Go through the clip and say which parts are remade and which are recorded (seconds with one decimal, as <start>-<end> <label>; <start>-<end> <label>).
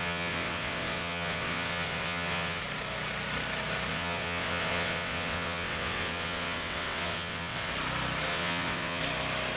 0.0-2.6 remade; 2.6-3.9 recorded; 3.9-7.7 remade; 7.7-8.3 recorded; 8.3-9.0 remade; 9.0-9.6 recorded